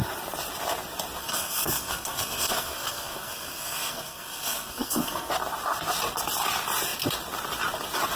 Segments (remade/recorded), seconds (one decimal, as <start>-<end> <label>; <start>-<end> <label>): 0.0-1.2 recorded; 1.2-5.3 remade; 5.3-8.2 recorded